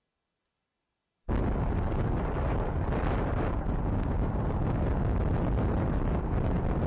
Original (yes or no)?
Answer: yes